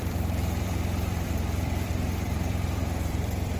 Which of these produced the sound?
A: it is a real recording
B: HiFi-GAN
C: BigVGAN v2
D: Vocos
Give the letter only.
C